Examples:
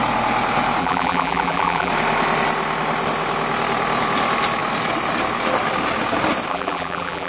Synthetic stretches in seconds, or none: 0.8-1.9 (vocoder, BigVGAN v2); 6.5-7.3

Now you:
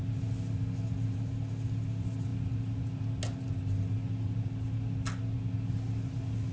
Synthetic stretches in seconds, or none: none